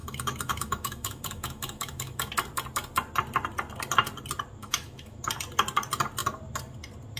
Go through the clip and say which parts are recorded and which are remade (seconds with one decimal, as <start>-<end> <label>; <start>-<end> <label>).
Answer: 0.0-2.3 remade; 2.3-4.6 recorded; 4.6-5.2 remade; 5.2-7.2 recorded